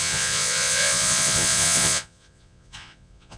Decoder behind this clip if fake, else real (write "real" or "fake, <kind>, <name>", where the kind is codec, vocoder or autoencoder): fake, vocoder, Vocos